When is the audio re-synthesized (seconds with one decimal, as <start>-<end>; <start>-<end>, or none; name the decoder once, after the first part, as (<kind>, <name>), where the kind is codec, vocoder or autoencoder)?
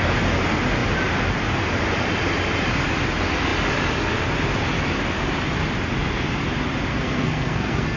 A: 6.9-8.0 (codec, SNAC)